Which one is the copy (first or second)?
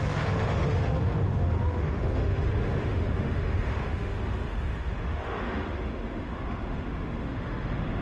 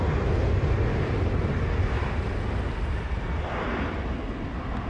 first